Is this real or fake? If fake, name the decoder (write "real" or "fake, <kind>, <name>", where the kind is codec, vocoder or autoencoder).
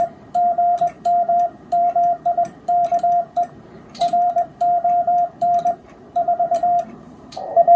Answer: fake, vocoder, BigVGAN v2